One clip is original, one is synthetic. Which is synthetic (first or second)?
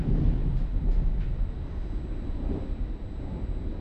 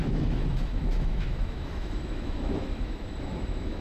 second